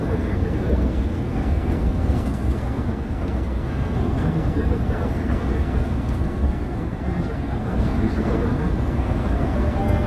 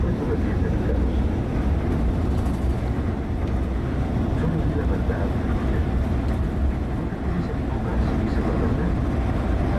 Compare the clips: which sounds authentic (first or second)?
second